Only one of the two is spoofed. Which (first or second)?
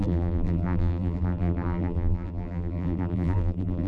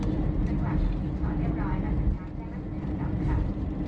first